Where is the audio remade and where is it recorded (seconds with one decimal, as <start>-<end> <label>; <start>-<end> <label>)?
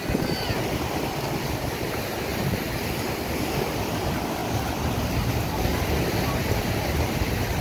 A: 0.0-7.6 remade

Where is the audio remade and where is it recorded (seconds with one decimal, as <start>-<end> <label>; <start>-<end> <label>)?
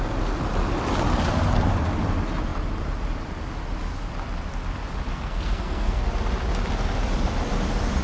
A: 0.0-5.1 recorded; 5.1-6.0 remade; 6.0-8.0 recorded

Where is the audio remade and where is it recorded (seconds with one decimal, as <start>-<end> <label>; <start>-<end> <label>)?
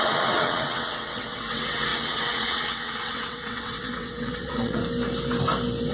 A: 0.0-4.8 remade; 4.8-5.9 recorded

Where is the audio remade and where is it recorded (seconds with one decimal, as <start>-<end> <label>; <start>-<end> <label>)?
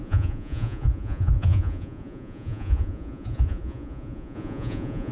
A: 0.0-5.1 remade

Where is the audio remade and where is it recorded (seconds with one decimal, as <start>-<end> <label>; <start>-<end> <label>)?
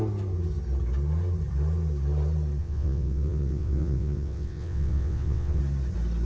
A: 0.0-2.6 recorded; 2.6-5.6 remade; 5.6-6.2 recorded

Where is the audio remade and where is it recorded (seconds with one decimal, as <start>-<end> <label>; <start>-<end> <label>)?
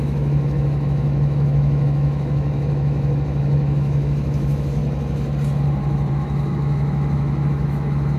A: 0.0-4.8 remade; 4.8-6.1 recorded; 6.1-8.2 remade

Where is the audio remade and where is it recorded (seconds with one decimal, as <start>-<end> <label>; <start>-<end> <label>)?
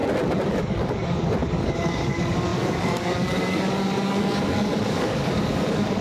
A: 0.0-0.5 recorded; 0.5-6.0 remade